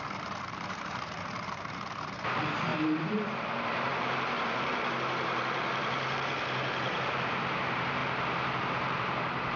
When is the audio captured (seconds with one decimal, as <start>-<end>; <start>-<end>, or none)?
none